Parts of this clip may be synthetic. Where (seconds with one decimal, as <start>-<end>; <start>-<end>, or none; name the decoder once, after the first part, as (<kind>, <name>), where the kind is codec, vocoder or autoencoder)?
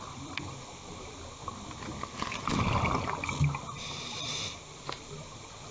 none